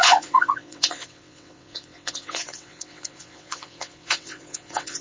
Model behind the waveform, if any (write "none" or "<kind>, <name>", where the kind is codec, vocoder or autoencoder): vocoder, WaveNeXt